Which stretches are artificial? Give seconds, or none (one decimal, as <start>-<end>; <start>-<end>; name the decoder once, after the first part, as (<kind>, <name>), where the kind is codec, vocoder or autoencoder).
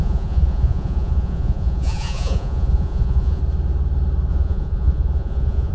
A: 0.0-3.4 (vocoder, Vocos); 4.3-5.7